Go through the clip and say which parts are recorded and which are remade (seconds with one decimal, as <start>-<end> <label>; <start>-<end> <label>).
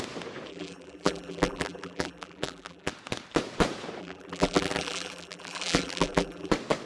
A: 0.0-0.5 recorded; 0.5-2.9 remade; 2.9-4.0 recorded; 4.0-6.5 remade; 6.5-6.9 recorded